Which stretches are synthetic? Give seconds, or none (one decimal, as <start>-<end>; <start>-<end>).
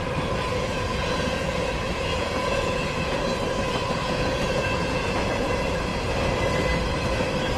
0.5-3.2; 4.0-5.5